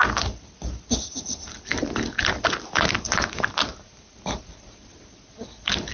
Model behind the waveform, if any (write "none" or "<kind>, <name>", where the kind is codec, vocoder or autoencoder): none